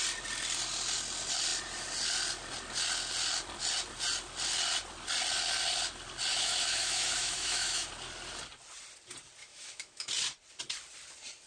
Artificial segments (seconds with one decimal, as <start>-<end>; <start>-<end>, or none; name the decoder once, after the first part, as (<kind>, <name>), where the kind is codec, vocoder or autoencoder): 6.3-7.9 (autoencoder, DAC-VAE); 9.4-10.1